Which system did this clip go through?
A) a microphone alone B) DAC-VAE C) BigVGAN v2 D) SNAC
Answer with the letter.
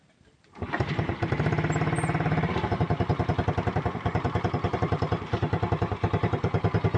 C